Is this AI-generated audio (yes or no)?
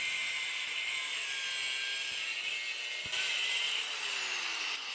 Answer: no